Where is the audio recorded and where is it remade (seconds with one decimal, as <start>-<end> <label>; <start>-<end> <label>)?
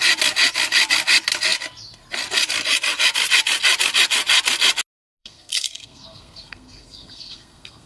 0.0-5.2 recorded; 5.2-7.9 remade